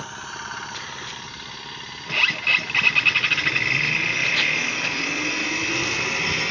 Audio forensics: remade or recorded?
recorded